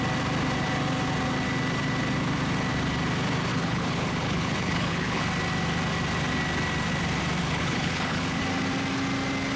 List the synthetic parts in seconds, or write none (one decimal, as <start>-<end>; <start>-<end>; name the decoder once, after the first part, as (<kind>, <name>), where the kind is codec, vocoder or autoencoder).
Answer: 3.5-5.2 (codec, HILCodec); 7.4-8.4